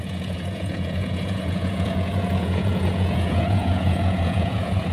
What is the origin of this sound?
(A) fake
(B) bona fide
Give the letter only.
A